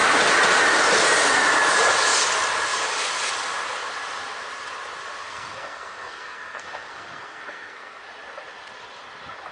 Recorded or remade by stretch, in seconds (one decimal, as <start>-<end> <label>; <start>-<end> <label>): 0.0-5.2 recorded; 5.2-8.0 remade; 8.0-9.5 recorded